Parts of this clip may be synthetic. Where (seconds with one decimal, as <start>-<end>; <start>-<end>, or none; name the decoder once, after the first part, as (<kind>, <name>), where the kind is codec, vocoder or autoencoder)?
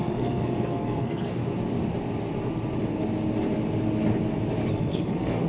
0.0-1.4 (codec, SNAC); 4.7-5.5